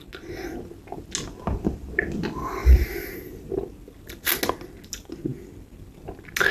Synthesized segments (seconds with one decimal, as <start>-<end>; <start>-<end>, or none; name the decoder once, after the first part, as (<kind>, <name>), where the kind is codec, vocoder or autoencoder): 2.6-3.5 (vocoder, BigVGAN v2)